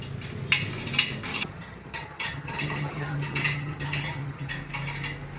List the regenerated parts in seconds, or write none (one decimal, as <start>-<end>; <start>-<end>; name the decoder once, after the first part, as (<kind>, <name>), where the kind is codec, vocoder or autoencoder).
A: 1.3-4.5 (vocoder, HiFi-GAN)